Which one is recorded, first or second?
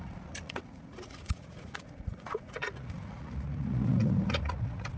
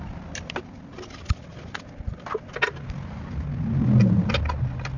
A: second